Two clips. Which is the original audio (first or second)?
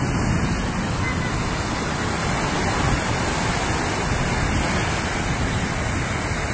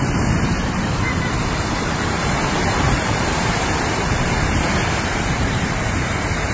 first